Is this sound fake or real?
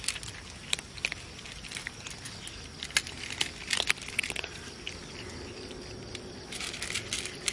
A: real